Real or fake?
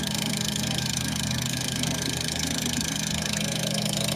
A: fake